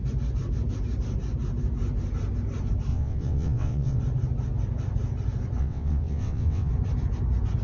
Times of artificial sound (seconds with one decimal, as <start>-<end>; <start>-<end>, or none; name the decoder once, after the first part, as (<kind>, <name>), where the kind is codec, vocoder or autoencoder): 2.9-4.0 (vocoder, WaveNeXt); 5.6-6.7